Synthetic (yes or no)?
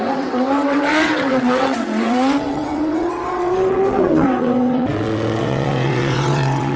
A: yes